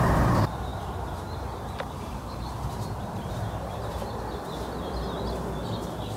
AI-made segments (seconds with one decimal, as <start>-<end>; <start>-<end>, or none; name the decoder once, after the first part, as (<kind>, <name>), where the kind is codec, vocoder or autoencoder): 0.7-4.2 (vocoder, BigVGAN v2)